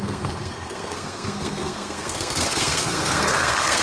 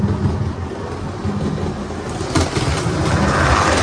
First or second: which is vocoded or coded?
first